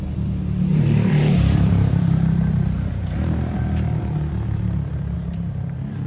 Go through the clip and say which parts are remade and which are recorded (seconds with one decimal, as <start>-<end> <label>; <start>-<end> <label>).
0.0-0.7 recorded; 0.7-4.0 remade; 4.0-6.1 recorded